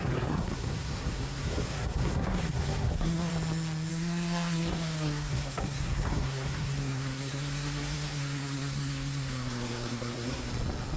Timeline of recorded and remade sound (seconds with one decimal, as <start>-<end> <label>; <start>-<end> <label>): 0.0-3.3 remade; 3.3-3.9 recorded; 3.9-10.5 remade; 10.5-11.0 recorded